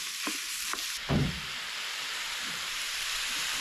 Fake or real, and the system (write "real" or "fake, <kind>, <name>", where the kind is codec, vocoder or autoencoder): fake, vocoder, BigVGAN v2